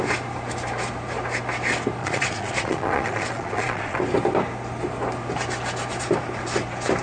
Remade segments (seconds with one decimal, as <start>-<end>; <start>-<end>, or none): 2.0-4.0